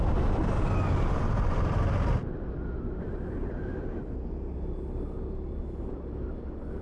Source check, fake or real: real